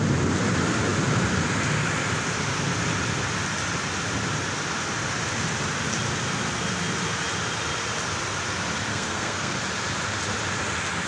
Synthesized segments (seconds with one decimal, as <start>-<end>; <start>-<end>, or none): 8.9-9.5